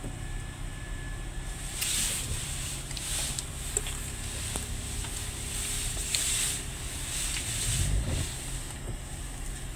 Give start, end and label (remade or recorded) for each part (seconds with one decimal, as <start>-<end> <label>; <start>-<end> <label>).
0.0-1.7 recorded; 1.7-4.0 remade; 4.0-9.8 recorded